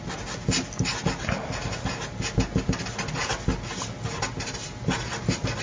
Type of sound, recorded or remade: recorded